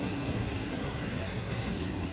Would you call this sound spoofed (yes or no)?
yes